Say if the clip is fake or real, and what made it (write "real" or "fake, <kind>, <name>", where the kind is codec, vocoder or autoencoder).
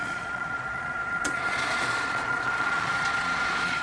fake, vocoder, Vocos